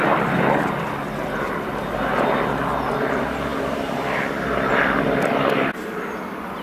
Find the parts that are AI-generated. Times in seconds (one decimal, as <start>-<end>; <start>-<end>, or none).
none